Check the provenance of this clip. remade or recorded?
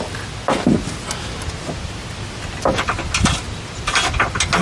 recorded